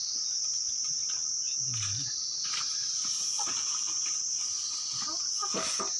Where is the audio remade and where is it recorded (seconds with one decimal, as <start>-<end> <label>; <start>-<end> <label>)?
0.0-6.0 recorded